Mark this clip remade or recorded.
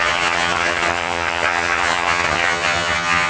remade